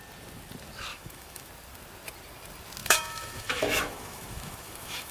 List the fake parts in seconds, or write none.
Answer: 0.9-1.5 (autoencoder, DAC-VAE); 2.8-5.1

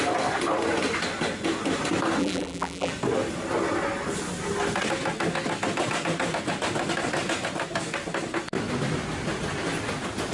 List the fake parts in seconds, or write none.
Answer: 2.2-2.9 (vocoder, BigVGAN v2)

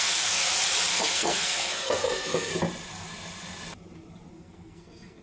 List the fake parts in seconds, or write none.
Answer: 0.0-0.4 (codec, SNAC); 0.9-2.5; 4.3-5.2

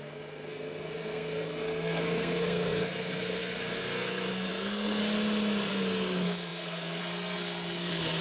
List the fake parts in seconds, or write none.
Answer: 0.0-5.0 (codec, SNAC); 5.7-8.2

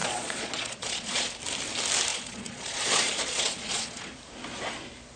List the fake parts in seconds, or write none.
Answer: 0.0-1.3 (vocoder, Vocos); 2.1-4.1